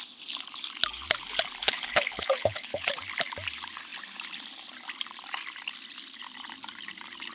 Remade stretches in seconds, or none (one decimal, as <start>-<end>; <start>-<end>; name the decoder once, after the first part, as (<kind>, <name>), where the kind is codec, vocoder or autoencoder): 1.6-2.9 (codec, HILCodec)